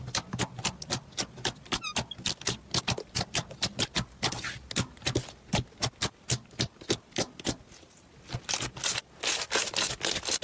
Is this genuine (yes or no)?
yes